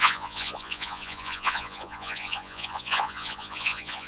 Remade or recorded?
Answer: remade